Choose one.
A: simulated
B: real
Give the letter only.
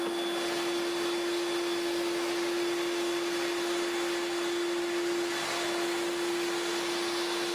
B